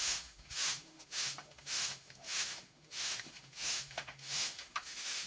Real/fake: fake